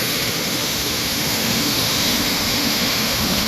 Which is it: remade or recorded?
remade